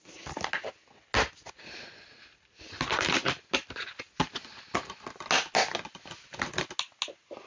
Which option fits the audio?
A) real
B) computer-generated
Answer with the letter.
A